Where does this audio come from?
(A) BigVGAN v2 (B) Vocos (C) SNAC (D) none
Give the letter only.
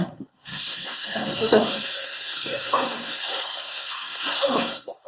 C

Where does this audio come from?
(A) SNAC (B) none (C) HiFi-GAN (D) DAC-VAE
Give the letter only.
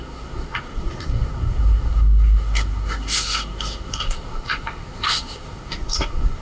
A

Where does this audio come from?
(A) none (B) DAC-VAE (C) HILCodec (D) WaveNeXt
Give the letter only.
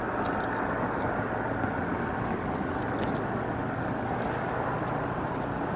A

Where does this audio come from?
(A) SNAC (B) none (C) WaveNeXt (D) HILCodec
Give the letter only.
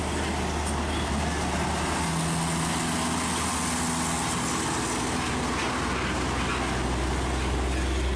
B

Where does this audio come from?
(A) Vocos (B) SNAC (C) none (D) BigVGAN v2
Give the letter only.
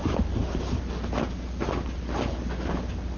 C